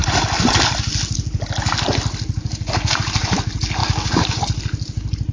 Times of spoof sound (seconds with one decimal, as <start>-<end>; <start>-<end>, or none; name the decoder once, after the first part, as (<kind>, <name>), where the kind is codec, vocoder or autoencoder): 3.8-4.4 (codec, DAC)